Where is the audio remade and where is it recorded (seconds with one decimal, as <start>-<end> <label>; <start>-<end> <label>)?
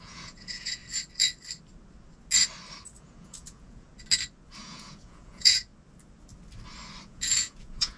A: 0.0-0.8 remade; 0.8-3.0 recorded; 3.0-3.9 remade; 3.9-4.6 recorded; 4.6-5.7 remade; 5.7-7.0 recorded; 7.0-8.0 remade